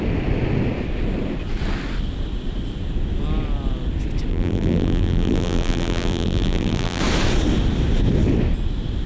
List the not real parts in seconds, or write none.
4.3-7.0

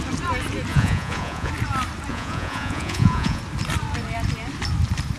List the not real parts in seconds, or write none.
0.7-1.5; 2.1-3.4

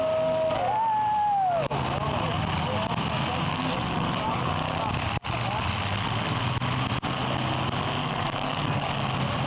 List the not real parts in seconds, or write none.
3.5-4.5; 8.0-9.1

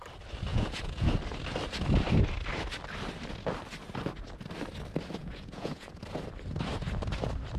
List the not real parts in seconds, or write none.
0.5-1.1; 5.2-5.9

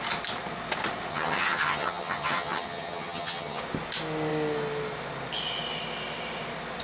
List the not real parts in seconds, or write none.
1.1-3.6

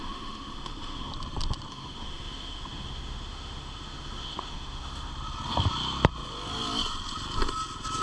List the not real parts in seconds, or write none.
0.0-1.1; 1.7-5.1

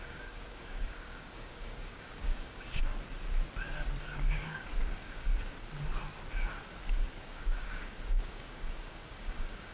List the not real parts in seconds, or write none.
0.0-2.9; 4.0-5.3; 6.9-9.7

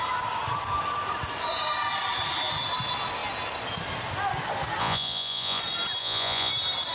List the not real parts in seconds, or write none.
4.8-5.6; 6.0-6.5